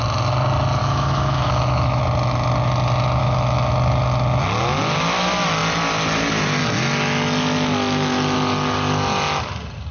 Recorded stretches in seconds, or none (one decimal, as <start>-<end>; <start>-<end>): 0.0-0.8; 2.0-3.2; 3.7-9.9